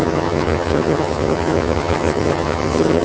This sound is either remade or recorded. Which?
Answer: remade